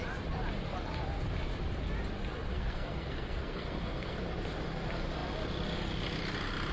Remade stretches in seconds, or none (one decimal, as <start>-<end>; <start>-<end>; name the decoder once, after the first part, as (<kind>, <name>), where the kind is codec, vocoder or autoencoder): 2.5-4.2 (codec, SNAC)